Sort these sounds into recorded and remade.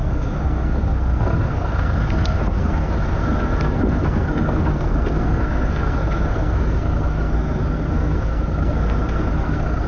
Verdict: remade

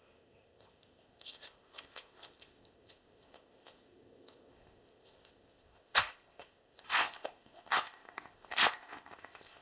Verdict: remade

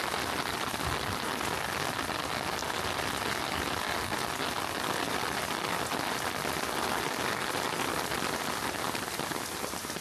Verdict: recorded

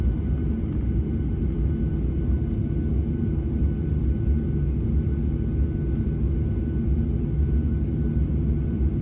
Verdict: recorded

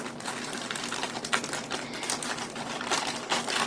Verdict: recorded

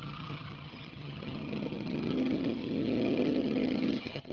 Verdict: remade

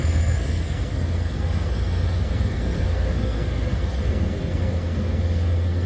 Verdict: remade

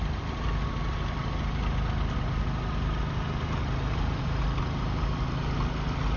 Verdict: recorded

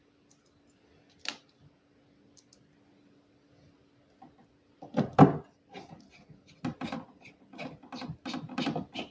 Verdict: recorded